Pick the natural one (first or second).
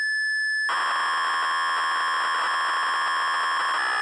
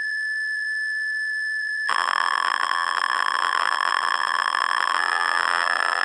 first